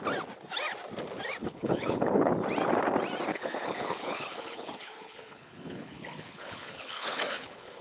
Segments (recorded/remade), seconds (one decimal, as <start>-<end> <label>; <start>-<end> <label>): 0.0-1.4 recorded; 1.4-2.3 remade; 2.3-3.3 recorded; 3.3-7.8 remade